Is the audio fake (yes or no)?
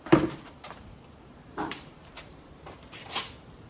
yes